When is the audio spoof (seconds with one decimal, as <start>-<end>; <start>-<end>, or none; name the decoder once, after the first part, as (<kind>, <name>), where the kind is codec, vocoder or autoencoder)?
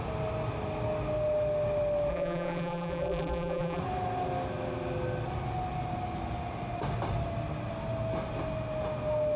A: 2.1-3.8 (vocoder, BigVGAN v2)